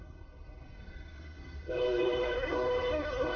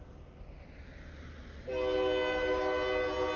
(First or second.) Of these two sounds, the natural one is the second